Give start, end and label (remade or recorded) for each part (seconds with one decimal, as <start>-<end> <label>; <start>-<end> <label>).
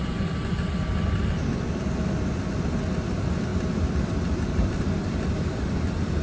0.0-3.5 recorded; 3.5-5.7 remade; 5.7-6.2 recorded